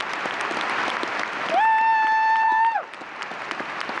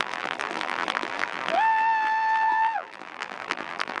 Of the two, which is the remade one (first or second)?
second